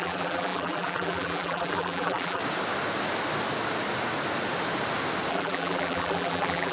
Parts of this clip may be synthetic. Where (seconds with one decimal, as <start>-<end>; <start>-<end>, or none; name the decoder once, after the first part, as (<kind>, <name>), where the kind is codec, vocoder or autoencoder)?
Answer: 0.0-2.4 (vocoder, BigVGAN v2); 5.3-6.7